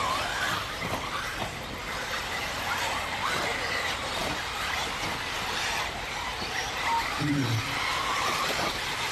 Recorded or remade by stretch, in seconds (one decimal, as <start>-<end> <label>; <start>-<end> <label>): 0.0-9.1 recorded